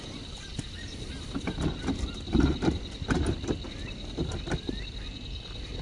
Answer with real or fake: real